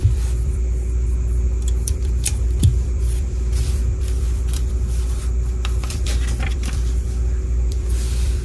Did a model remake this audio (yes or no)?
yes